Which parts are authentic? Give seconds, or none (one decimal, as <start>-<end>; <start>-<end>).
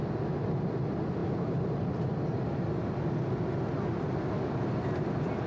0.0-5.5